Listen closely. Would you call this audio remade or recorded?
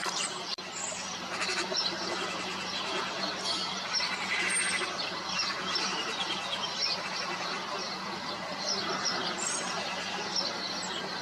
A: recorded